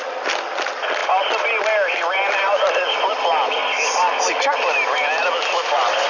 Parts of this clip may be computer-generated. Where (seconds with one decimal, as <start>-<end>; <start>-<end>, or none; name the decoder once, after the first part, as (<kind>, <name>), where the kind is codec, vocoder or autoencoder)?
none